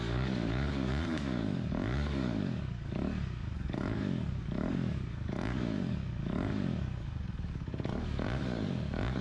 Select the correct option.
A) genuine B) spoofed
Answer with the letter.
B